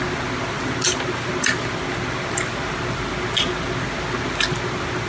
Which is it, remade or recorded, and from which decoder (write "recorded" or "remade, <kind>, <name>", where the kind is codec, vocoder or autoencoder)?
recorded